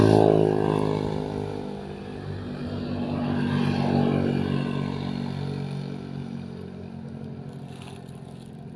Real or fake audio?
real